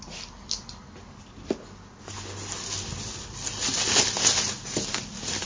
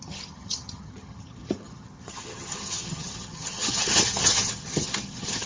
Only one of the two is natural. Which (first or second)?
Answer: first